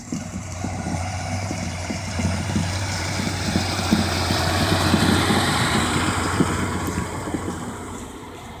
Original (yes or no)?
no